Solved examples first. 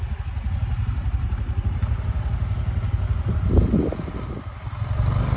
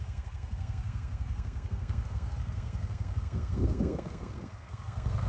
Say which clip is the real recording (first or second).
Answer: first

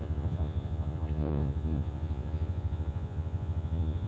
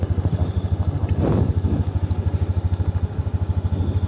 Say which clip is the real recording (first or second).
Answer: second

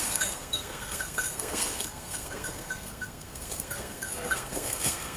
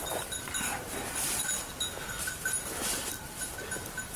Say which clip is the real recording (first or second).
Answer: second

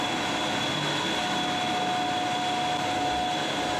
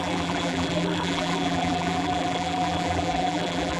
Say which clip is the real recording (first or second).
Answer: first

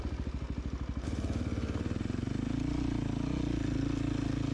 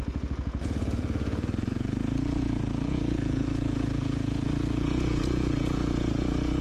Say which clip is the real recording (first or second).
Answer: first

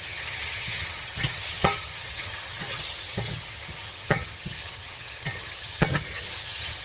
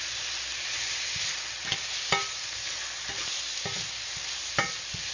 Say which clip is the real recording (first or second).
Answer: second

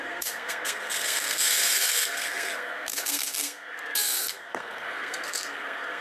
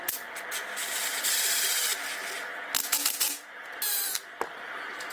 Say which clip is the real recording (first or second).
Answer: second